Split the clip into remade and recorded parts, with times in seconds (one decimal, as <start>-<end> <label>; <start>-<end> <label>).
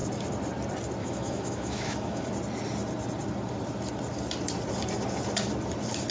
0.0-1.0 recorded; 1.0-2.3 remade; 2.3-6.1 recorded